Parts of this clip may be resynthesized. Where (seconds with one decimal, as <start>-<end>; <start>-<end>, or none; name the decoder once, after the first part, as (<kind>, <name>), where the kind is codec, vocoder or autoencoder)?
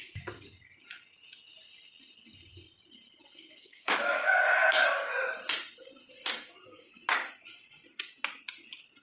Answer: 3.6-5.1 (codec, DAC); 6.3-6.9